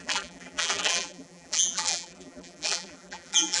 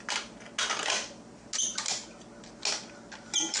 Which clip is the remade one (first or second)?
first